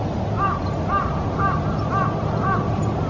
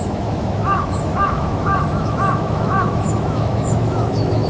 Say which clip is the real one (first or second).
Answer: first